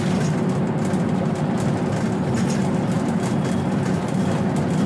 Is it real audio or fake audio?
real